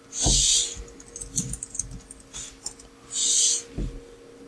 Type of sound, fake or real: real